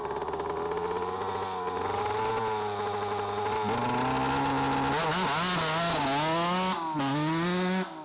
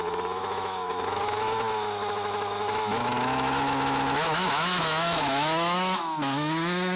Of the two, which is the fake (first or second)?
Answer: second